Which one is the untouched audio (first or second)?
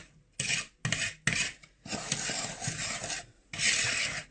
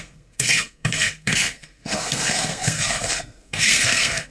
first